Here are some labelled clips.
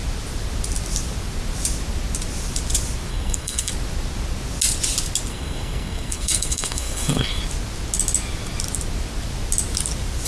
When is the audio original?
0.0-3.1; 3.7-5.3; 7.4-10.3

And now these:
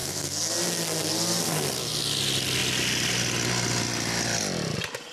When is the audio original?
0.5-5.1

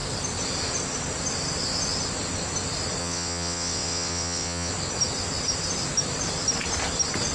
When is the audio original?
0.0-3.0; 4.7-7.3

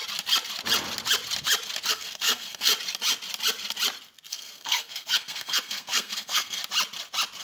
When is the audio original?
0.0-1.9; 2.7-4.3; 6.6-7.4

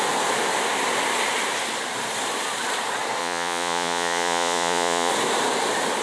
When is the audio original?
0.0-3.2; 5.1-6.0

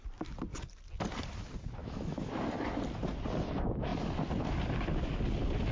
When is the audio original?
0.0-1.8; 2.3-5.7

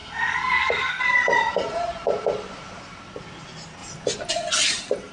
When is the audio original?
1.0-5.1